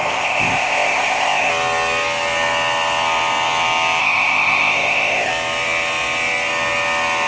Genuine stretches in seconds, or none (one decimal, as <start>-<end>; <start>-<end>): 1.5-4.0; 5.3-7.3